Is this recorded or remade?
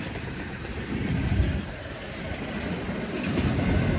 recorded